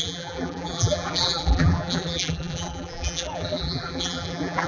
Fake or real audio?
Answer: fake